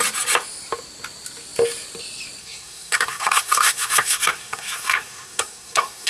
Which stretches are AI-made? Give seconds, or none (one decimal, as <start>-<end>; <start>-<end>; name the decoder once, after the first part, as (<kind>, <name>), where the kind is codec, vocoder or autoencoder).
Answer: 2.4-6.1 (codec, SNAC)